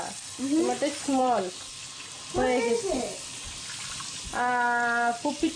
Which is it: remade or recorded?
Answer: recorded